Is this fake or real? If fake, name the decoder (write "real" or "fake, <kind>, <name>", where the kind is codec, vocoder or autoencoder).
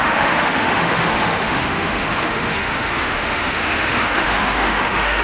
fake, autoencoder, DAC-VAE